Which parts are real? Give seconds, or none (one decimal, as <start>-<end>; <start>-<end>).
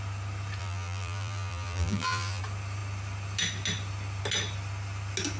0.0-0.6; 2.4-5.4